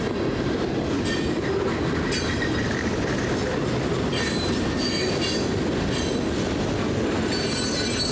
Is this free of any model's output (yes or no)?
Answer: yes